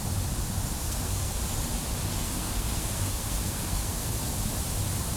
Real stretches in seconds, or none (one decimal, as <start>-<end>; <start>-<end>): 0.0-0.8; 1.4-2.1; 4.3-5.2